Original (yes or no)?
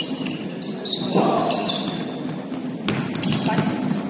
yes